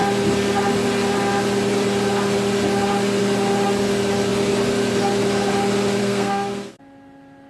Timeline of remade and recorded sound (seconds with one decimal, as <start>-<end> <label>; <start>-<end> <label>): 0.0-6.0 recorded; 6.0-6.8 remade; 6.8-7.5 recorded